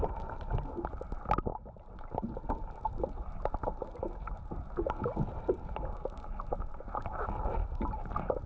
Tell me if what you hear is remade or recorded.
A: recorded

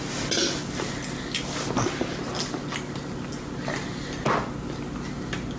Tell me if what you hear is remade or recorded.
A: recorded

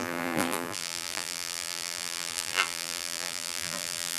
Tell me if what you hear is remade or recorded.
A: remade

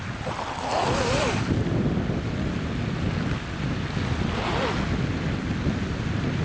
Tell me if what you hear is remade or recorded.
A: recorded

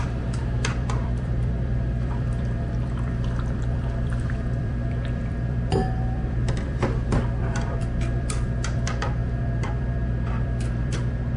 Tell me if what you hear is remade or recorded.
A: remade